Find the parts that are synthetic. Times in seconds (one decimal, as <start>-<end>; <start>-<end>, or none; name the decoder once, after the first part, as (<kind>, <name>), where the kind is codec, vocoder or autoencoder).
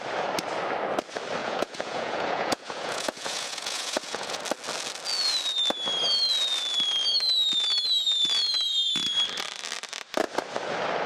1.4-4.4 (vocoder, Vocos)